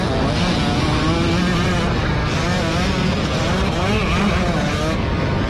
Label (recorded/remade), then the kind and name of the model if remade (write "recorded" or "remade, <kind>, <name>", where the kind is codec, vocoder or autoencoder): recorded